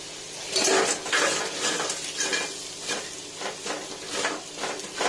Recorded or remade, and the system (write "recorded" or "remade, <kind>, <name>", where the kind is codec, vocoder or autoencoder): recorded